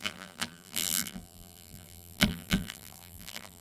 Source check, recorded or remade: remade